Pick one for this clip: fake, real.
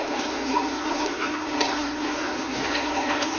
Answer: fake